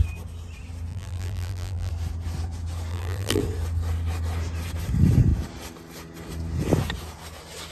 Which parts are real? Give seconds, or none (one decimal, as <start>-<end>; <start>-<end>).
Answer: 0.0-0.9; 1.9-2.9; 3.4-7.7